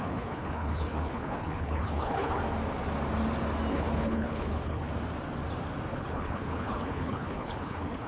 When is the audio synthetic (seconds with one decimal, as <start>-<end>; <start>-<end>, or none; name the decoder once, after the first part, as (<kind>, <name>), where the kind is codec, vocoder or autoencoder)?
0.0-2.4 (codec, HILCodec); 3.7-4.9; 5.9-8.1